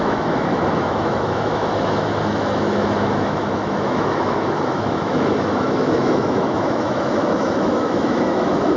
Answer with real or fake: fake